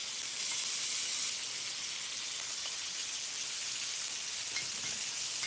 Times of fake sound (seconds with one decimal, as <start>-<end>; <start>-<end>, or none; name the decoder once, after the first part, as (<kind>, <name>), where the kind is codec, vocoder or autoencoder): 2.6-3.2 (vocoder, HiFi-GAN)